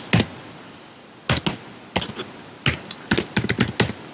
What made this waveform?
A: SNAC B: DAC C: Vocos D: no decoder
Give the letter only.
D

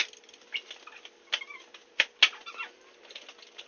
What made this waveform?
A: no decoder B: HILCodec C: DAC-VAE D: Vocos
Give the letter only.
A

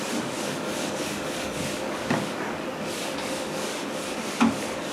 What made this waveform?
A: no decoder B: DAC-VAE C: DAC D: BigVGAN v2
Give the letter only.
C